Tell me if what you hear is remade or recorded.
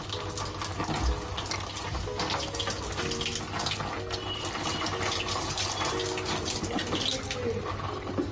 recorded